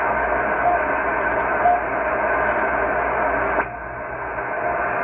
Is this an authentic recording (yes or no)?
yes